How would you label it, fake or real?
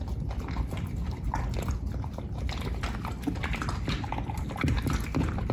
real